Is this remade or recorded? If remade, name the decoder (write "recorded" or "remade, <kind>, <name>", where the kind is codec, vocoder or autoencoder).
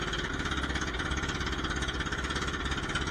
recorded